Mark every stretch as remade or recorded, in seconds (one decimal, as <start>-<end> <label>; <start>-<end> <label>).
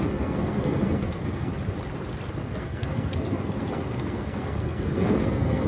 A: 0.0-1.5 remade; 1.5-2.3 recorded; 2.3-5.7 remade